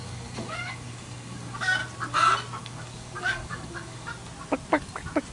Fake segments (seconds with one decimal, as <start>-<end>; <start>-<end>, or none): 0.0-1.8; 2.6-4.1